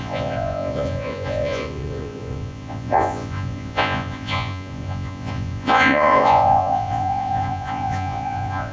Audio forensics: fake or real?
fake